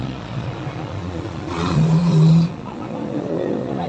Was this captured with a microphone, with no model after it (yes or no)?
no